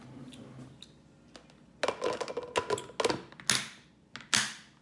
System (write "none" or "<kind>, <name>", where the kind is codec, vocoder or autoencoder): none